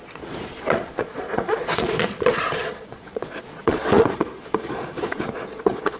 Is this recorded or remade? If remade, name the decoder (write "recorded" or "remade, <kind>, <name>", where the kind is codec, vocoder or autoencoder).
remade, vocoder, Vocos